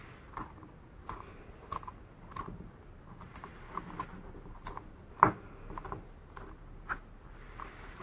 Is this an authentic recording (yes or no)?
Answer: yes